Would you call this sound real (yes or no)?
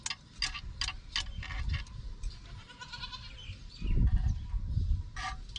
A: yes